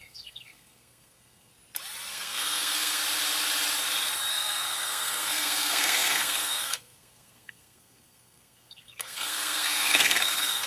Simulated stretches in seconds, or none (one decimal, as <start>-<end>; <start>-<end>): 0.0-1.5; 2.1-3.0; 4.3-10.7